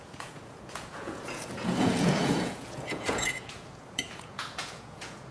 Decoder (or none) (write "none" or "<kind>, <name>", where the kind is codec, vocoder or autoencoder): vocoder, Vocos